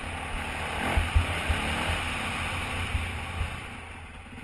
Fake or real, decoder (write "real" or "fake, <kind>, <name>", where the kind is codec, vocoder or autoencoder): real